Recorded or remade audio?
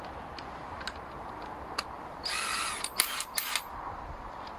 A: recorded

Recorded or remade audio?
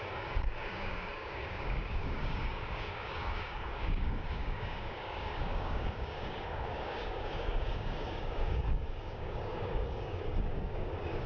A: remade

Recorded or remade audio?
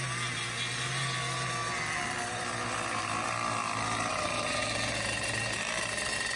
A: recorded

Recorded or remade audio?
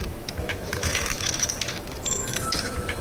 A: remade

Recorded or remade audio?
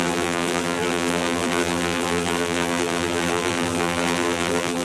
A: remade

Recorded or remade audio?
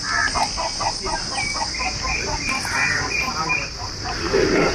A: recorded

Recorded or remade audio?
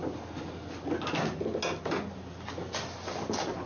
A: recorded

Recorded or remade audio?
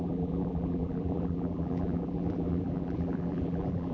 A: remade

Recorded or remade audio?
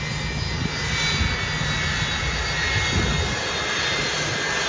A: recorded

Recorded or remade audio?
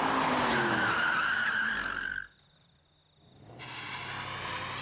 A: recorded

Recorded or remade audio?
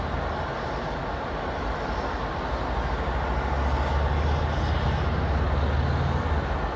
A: recorded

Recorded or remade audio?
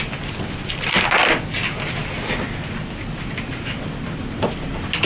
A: recorded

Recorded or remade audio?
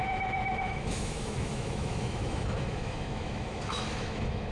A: remade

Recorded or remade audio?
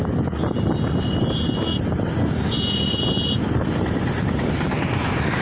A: recorded